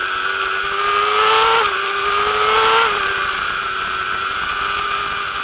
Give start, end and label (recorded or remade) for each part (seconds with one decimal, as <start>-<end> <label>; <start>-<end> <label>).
0.0-5.4 recorded

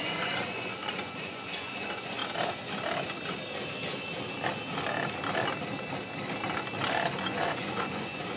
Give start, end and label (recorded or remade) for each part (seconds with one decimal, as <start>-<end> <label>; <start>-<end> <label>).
0.0-2.2 remade; 2.2-7.2 recorded; 7.2-8.4 remade

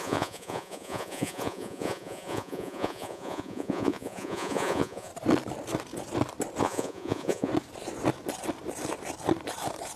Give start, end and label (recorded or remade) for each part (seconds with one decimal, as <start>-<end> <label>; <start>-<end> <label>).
0.0-5.1 remade; 5.1-6.6 recorded; 6.6-7.5 remade; 7.5-10.0 recorded

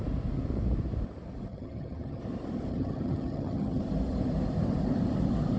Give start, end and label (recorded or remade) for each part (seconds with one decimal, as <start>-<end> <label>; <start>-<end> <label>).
0.0-1.5 recorded; 1.5-2.2 remade; 2.2-2.7 recorded; 2.7-3.8 remade; 3.8-5.6 recorded

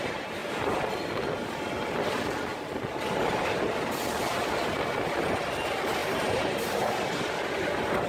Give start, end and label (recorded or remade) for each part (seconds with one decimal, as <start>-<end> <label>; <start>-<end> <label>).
0.0-6.0 recorded; 6.0-7.4 remade; 7.4-8.1 recorded

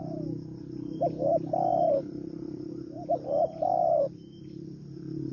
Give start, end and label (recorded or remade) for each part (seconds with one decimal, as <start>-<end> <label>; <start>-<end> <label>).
0.0-1.7 recorded; 1.7-5.3 remade

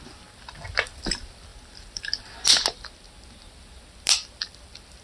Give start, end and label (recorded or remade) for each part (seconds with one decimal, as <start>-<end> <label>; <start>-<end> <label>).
0.0-5.0 recorded